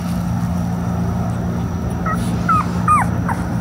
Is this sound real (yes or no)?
yes